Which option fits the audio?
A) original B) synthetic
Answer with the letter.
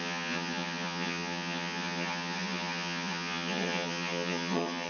B